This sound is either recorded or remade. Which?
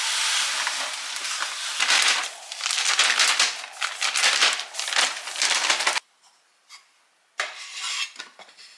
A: recorded